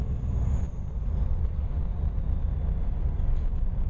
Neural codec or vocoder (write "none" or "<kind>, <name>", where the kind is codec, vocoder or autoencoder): none